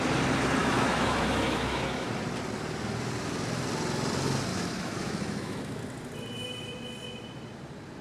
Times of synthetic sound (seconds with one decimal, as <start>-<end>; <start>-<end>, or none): 0.6-2.1; 4.5-5.8